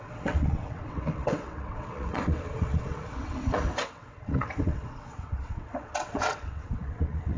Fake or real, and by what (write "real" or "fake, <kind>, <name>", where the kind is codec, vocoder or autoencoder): fake, vocoder, WaveNeXt